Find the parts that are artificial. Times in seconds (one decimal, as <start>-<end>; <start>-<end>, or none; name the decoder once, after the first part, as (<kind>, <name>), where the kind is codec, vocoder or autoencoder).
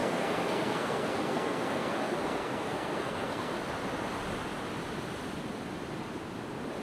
0.0-3.6 (codec, SNAC)